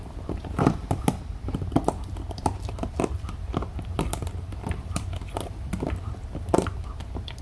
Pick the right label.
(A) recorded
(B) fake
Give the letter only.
B